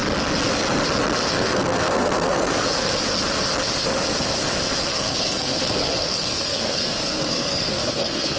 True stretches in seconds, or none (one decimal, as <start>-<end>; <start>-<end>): 0.0-1.3; 2.9-4.8